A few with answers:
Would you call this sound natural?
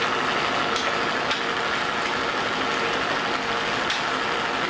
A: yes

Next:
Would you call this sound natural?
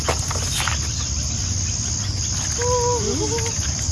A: yes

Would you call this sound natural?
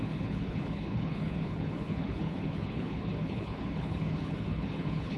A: no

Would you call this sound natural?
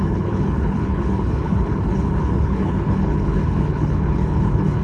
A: no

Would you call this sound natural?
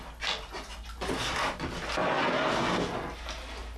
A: yes